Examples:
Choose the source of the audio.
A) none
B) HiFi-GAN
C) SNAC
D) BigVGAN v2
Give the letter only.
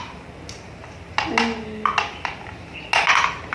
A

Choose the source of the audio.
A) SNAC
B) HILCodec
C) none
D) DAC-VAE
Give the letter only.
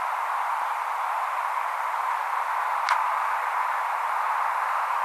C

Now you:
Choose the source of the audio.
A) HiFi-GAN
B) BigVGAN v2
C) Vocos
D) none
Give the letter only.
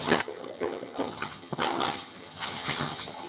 A